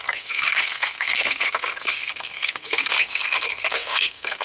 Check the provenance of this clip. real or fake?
fake